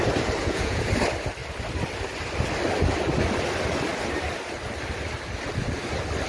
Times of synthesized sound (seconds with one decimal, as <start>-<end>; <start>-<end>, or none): 0.4-0.9